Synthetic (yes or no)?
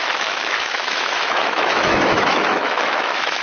yes